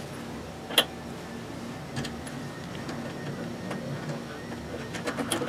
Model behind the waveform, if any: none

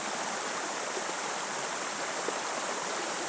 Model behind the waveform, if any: none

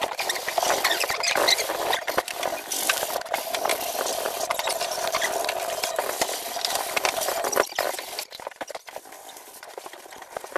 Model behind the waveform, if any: vocoder, BigVGAN v2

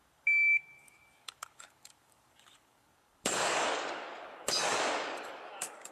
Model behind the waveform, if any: codec, DAC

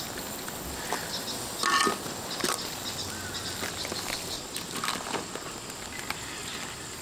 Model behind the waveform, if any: none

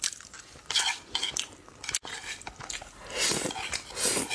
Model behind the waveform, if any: none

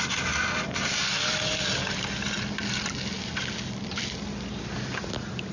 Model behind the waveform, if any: none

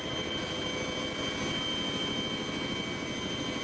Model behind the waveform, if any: none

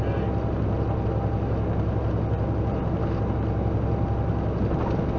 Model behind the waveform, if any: none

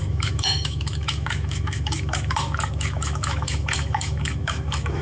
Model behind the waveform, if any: autoencoder, DAC-VAE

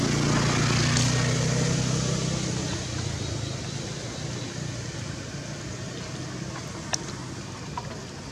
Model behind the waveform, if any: none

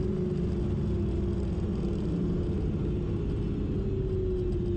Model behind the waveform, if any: none